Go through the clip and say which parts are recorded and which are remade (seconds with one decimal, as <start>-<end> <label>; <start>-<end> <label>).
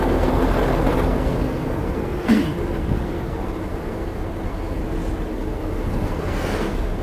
0.0-4.8 remade; 4.8-5.3 recorded; 5.3-7.0 remade